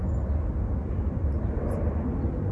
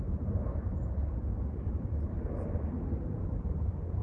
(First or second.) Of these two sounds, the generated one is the second